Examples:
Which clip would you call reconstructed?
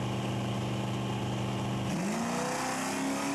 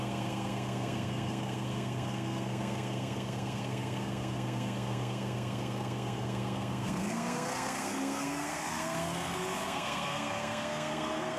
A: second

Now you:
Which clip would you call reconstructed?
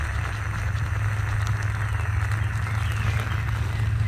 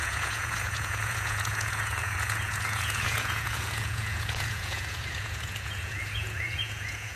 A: second